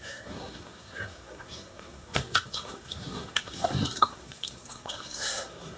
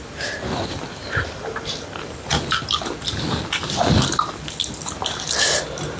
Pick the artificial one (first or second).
first